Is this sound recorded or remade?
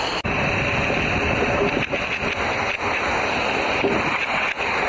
recorded